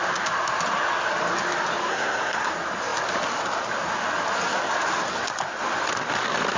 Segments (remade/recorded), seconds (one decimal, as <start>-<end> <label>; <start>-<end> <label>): 0.0-1.9 recorded; 1.9-2.5 remade; 2.5-6.6 recorded